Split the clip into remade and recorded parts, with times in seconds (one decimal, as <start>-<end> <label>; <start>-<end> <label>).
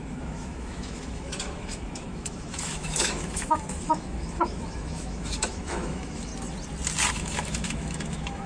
0.0-6.3 remade; 6.3-7.1 recorded; 7.1-8.5 remade